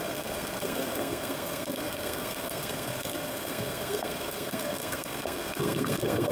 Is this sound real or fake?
fake